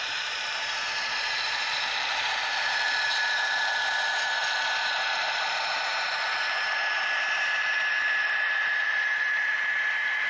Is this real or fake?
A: fake